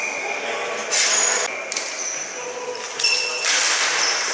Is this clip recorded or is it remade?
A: recorded